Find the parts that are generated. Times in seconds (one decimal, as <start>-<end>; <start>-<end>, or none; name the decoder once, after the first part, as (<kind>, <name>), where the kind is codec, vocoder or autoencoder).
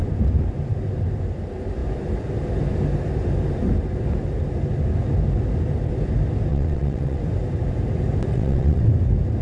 6.5-7.2 (vocoder, WaveNeXt); 8.3-8.9